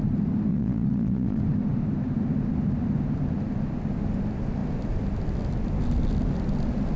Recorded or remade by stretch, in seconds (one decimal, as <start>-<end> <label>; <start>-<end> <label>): 0.0-0.5 recorded; 0.5-1.4 remade; 1.4-7.0 recorded